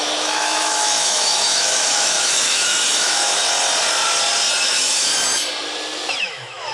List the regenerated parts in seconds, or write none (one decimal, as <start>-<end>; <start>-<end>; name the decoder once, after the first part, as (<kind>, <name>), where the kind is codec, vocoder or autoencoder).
0.0-3.4 (autoencoder, DAC-VAE); 4.6-5.1; 6.2-6.7